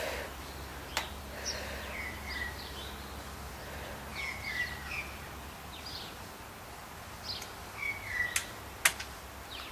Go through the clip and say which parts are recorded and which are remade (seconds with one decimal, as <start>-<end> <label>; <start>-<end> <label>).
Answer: 0.0-9.7 recorded